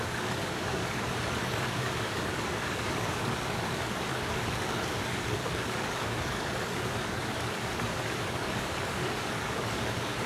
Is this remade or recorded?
remade